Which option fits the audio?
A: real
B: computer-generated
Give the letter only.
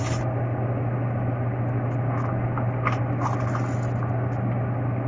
A